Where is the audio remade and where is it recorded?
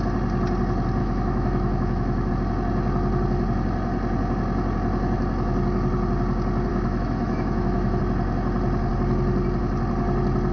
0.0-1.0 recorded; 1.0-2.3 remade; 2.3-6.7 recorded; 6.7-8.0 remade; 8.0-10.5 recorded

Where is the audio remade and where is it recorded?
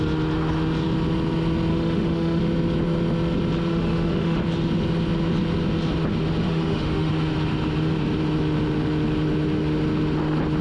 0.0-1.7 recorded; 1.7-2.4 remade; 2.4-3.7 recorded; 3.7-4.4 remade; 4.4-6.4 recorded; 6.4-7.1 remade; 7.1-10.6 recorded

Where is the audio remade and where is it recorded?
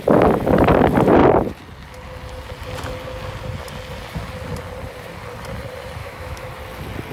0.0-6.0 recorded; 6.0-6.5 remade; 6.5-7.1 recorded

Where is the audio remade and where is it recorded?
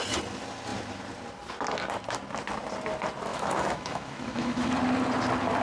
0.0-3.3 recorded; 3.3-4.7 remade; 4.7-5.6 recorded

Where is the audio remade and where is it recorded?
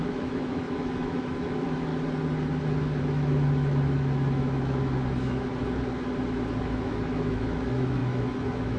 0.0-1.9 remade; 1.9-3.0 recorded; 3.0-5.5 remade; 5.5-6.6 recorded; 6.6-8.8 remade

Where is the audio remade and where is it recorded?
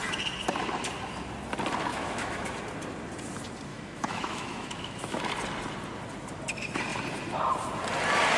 0.0-1.9 recorded; 1.9-2.5 remade; 2.5-3.7 recorded; 3.7-5.2 remade; 5.2-8.4 recorded